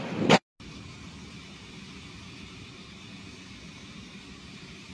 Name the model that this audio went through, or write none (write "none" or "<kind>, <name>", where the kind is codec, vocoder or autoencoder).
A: none